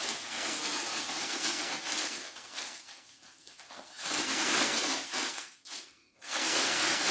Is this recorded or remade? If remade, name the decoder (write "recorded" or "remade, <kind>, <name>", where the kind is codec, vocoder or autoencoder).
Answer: remade, codec, SNAC